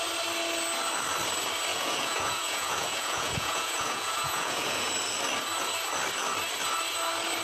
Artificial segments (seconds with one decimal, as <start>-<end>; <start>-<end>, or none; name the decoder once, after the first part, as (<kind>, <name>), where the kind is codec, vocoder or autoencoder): 1.7-4.9 (vocoder, Vocos)